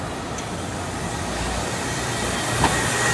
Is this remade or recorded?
recorded